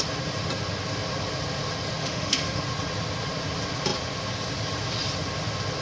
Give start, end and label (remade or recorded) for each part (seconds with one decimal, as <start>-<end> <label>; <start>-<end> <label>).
0.0-2.0 recorded; 2.0-2.6 remade; 2.6-5.8 recorded